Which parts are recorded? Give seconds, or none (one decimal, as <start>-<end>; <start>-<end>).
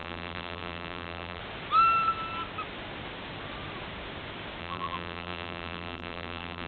1.4-4.6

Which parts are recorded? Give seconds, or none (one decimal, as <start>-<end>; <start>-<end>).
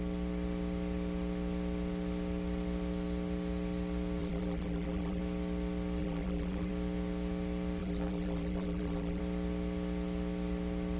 0.0-4.2; 5.2-6.0; 6.7-7.8; 9.2-11.0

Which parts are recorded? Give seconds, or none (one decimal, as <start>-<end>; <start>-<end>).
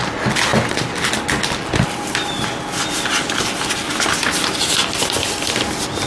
0.0-6.1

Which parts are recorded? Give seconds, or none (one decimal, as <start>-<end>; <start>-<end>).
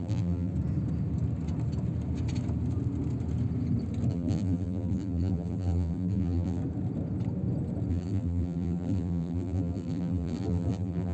0.5-4.1; 6.6-7.9